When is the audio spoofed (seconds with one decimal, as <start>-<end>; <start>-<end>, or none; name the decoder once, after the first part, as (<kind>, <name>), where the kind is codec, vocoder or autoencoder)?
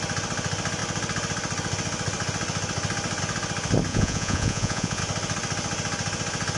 3.9-5.0 (vocoder, Vocos)